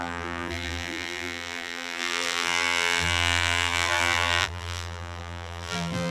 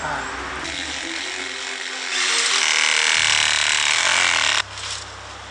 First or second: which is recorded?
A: second